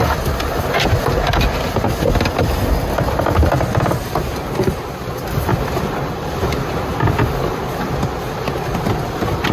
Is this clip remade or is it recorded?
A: recorded